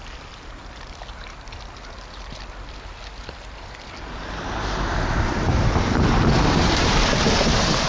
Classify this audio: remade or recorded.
recorded